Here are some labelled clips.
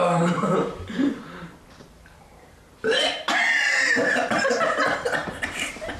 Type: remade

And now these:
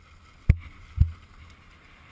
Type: recorded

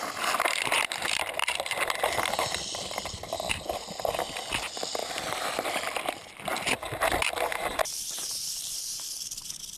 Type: remade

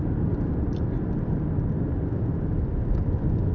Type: remade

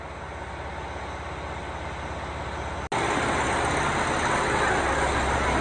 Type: recorded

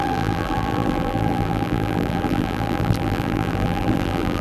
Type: remade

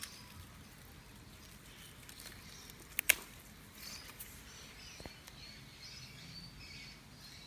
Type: recorded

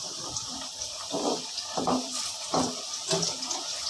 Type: remade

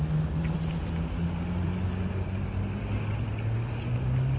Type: recorded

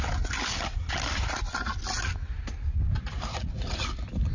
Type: recorded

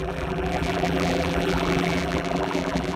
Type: remade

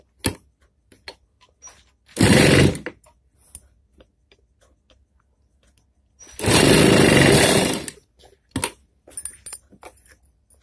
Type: recorded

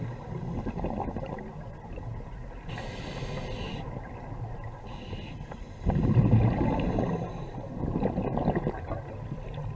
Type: recorded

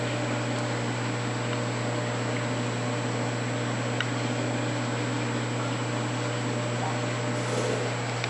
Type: recorded